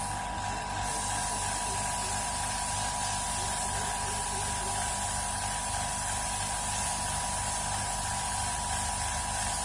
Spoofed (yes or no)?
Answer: no